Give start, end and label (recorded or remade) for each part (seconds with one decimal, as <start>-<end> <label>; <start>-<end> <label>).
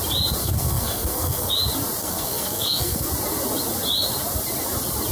0.0-0.4 recorded; 0.4-1.5 remade; 1.5-2.0 recorded; 2.0-3.1 remade; 3.1-5.1 recorded